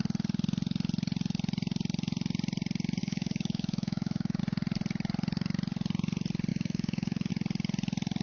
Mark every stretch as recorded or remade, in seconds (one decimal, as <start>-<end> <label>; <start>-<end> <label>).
0.0-3.0 recorded; 3.0-4.4 remade; 4.4-6.5 recorded; 6.5-7.3 remade; 7.3-8.2 recorded

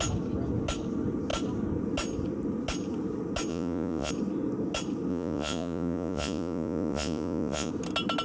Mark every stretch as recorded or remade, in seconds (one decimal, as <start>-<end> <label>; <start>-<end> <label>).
0.0-3.5 recorded; 3.5-4.1 remade; 4.1-5.1 recorded; 5.1-7.7 remade; 7.7-8.2 recorded